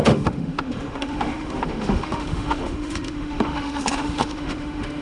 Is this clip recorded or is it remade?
remade